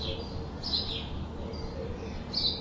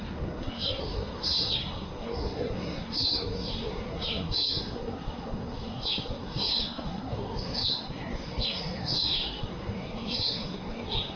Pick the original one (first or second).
first